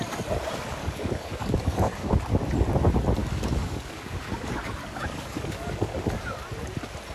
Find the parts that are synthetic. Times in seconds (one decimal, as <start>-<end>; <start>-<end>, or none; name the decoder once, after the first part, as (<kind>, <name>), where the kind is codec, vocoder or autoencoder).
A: 0.8-2.2 (codec, DAC); 3.2-6.4